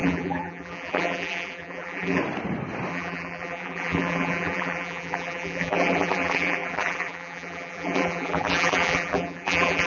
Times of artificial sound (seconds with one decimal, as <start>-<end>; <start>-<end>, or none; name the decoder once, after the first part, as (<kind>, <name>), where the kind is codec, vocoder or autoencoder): 0.0-2.2 (vocoder, BigVGAN v2); 2.9-9.9